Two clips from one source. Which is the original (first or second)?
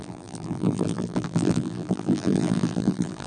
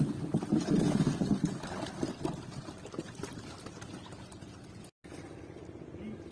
second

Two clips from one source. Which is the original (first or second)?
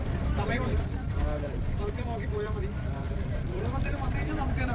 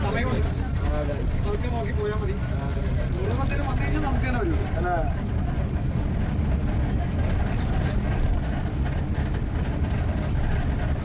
second